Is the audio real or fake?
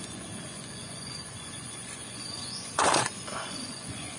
fake